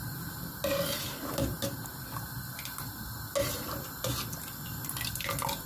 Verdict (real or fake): real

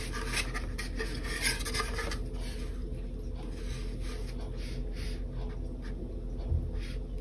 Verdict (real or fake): real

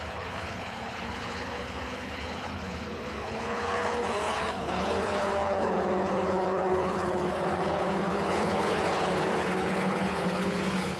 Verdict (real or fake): fake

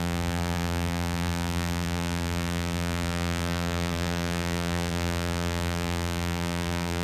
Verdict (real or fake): fake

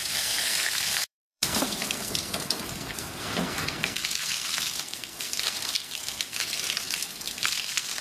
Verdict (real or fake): fake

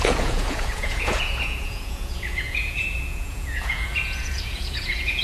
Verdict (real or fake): fake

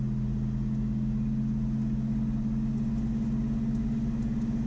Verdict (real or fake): real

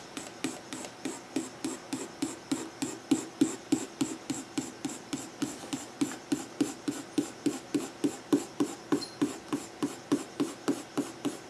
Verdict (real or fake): real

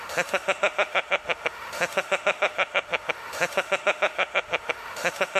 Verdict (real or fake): fake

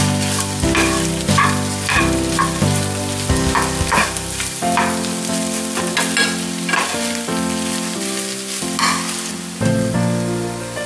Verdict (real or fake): real